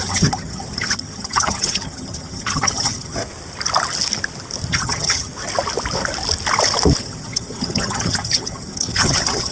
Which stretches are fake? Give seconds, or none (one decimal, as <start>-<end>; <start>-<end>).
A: 0.0-3.2; 4.7-5.3; 7.0-9.5